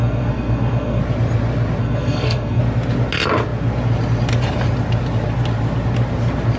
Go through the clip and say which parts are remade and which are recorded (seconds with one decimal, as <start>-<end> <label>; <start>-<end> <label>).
0.0-1.0 remade; 1.0-1.8 recorded; 1.8-2.6 remade; 2.6-6.6 recorded

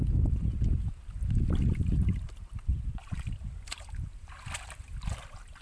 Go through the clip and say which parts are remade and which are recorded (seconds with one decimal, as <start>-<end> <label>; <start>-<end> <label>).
0.0-3.0 recorded; 3.0-4.3 remade; 4.3-5.6 recorded